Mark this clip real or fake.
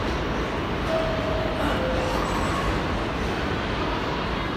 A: real